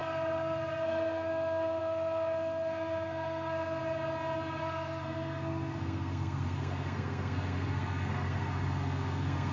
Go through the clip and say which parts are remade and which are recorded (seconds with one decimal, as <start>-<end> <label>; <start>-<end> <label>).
0.0-3.8 remade; 3.8-4.6 recorded; 4.6-9.5 remade